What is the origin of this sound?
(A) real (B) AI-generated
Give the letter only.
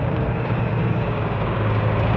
B